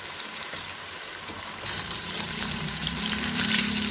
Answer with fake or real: fake